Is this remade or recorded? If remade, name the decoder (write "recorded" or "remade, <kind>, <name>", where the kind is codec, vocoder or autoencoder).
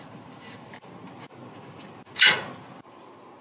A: recorded